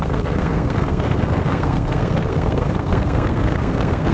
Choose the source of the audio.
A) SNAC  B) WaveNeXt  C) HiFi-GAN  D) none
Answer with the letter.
A